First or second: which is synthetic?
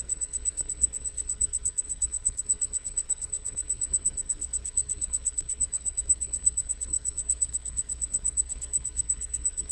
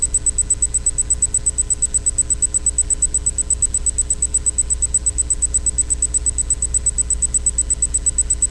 first